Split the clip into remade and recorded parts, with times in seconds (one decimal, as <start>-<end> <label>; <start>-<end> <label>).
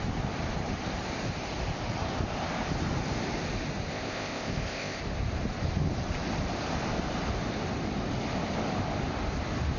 0.0-3.9 recorded; 3.9-5.0 remade; 5.0-9.8 recorded